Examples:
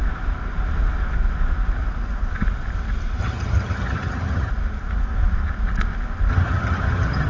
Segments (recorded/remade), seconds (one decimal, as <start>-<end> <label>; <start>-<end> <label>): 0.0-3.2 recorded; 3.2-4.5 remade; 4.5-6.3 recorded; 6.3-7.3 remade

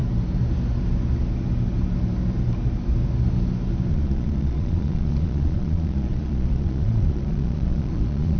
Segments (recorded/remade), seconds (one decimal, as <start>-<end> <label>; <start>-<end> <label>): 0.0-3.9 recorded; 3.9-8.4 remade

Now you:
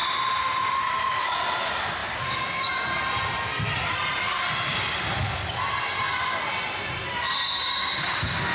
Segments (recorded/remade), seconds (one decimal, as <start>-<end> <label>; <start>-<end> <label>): 0.0-2.0 recorded; 2.0-2.7 remade; 2.7-8.5 recorded